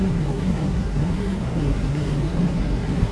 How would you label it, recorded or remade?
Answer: remade